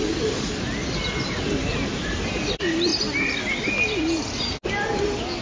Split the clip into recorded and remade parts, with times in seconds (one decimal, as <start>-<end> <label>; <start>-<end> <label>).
0.0-5.4 recorded